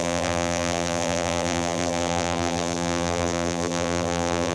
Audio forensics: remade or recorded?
remade